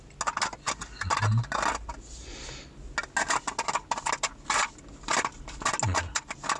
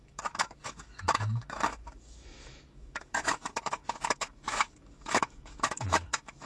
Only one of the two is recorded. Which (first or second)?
first